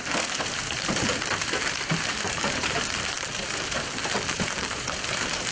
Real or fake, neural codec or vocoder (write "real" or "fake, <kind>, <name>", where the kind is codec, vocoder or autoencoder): fake, vocoder, BigVGAN v2